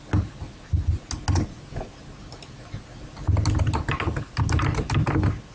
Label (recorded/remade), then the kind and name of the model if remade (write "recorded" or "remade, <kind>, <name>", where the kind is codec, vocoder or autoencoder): recorded